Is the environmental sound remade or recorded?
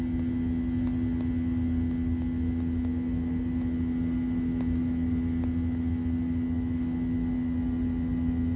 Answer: recorded